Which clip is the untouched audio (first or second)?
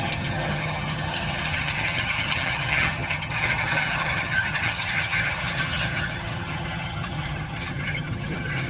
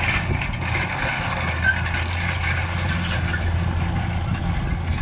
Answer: second